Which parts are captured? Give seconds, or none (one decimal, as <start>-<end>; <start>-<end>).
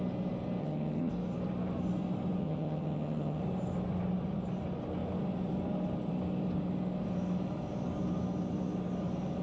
0.0-0.6; 1.1-2.4; 3.4-9.4